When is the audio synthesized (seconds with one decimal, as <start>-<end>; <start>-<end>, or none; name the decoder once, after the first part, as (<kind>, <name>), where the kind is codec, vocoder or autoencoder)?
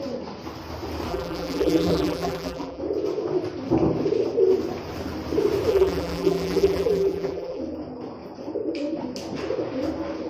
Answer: 1.1-2.8 (vocoder, BigVGAN v2); 5.7-7.6